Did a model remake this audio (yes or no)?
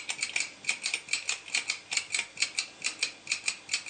no